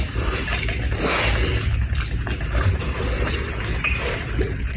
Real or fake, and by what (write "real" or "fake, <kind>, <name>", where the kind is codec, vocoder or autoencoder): real